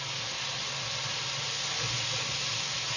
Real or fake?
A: real